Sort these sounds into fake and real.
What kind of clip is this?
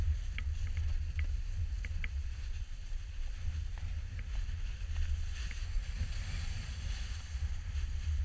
real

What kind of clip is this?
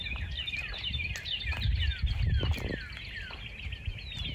real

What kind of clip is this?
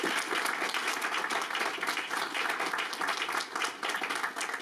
real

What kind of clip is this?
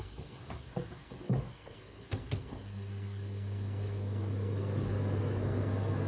fake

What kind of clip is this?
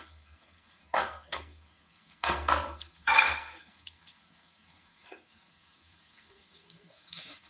fake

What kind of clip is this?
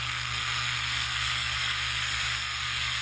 fake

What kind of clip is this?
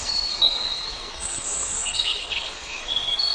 fake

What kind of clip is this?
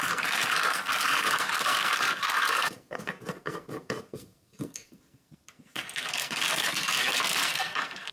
fake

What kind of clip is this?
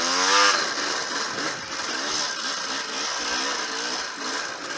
real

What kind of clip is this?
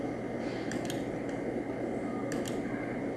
real